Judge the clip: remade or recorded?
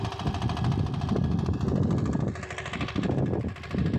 recorded